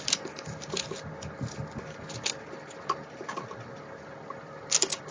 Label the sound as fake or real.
real